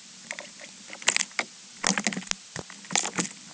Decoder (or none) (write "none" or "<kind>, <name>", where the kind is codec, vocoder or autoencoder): none